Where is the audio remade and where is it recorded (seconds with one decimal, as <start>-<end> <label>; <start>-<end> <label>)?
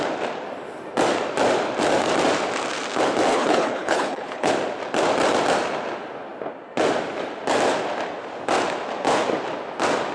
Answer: 0.0-3.3 recorded; 3.3-4.5 remade; 4.5-10.1 recorded